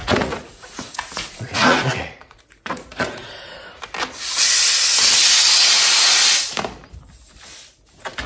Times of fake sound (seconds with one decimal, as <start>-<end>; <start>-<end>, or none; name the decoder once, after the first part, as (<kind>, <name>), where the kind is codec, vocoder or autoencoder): 0.0-3.7 (vocoder, Vocos)